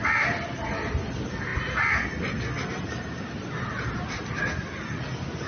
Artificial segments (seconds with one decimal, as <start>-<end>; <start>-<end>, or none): none